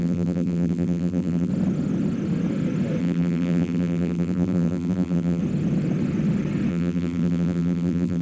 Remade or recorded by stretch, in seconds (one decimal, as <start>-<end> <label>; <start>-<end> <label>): 0.0-1.5 remade; 1.5-3.0 recorded; 3.0-5.4 remade; 5.4-6.7 recorded; 6.7-8.2 remade